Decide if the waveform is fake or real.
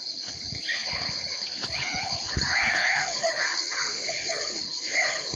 fake